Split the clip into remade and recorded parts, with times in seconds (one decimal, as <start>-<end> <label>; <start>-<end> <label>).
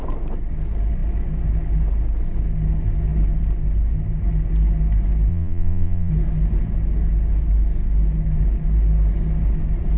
0.0-5.3 recorded; 5.3-6.1 remade; 6.1-10.0 recorded